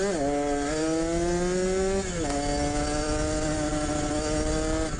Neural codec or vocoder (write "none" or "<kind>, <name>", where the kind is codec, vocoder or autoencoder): none